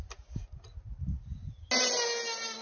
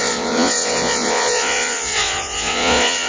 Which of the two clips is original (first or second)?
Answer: first